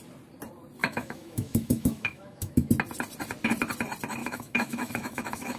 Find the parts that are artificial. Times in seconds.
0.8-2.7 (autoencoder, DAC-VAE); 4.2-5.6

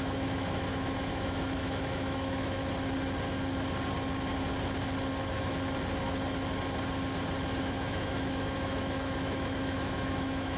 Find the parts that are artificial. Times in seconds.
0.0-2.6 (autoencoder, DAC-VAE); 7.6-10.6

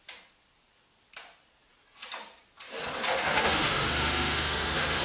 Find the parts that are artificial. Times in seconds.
3.1-5.0 (autoencoder, DAC-VAE)

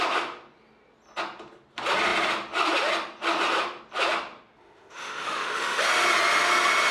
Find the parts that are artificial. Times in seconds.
4.6-5.9 (autoencoder, DAC-VAE)